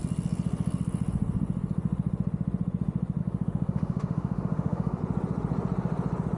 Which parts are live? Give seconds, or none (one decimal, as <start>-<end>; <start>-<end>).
0.0-3.2; 5.0-6.4